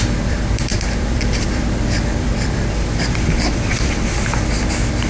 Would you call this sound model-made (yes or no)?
yes